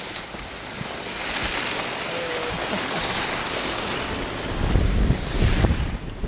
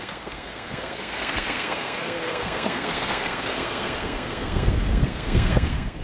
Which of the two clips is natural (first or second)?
first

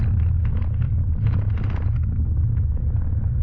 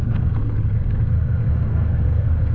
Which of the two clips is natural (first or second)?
first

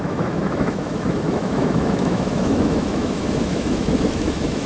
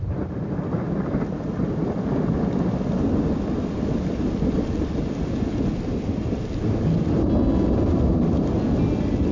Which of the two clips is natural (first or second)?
second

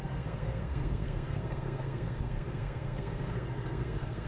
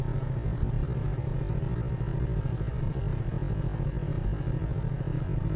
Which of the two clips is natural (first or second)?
second